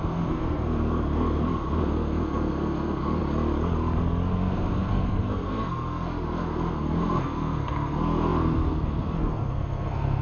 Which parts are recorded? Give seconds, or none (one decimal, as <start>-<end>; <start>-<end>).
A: 3.2-4.3